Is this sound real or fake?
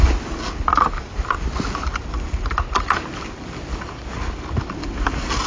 real